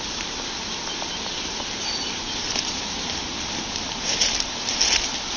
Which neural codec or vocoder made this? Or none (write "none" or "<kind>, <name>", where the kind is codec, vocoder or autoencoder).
none